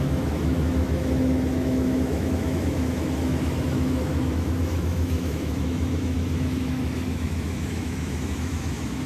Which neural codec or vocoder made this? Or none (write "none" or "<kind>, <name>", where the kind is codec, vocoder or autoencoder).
autoencoder, DAC-VAE